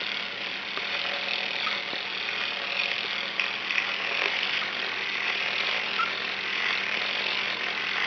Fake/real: real